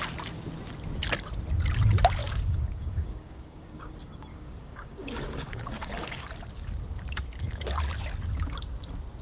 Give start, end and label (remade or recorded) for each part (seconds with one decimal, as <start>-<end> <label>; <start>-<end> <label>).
0.0-2.2 recorded; 2.2-3.9 remade; 3.9-4.3 recorded; 4.3-6.3 remade; 6.3-9.2 recorded

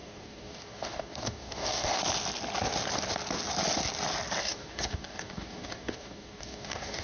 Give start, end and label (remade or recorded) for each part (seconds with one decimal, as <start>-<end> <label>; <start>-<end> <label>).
0.0-2.0 remade; 2.0-4.4 recorded; 4.4-7.0 remade

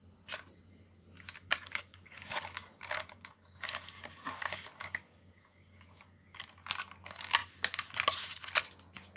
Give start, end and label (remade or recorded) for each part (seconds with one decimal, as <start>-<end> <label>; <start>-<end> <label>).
0.0-1.5 recorded; 1.5-6.4 remade; 6.4-9.2 recorded

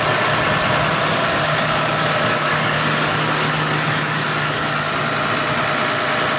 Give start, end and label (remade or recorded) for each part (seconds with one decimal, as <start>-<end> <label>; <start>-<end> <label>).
0.0-1.1 recorded; 1.1-4.9 remade; 4.9-6.4 recorded